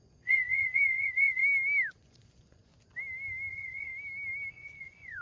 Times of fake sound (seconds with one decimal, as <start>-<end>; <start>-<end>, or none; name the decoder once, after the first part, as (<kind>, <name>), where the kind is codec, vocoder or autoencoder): 0.0-1.4 (vocoder, Vocos); 1.9-2.7; 3.5-3.9; 4.5-5.2